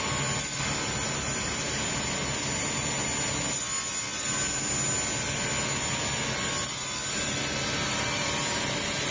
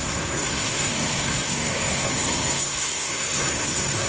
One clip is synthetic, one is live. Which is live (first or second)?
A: first